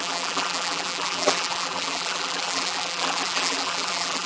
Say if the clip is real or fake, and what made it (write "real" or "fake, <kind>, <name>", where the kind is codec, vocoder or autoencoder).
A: fake, vocoder, BigVGAN v2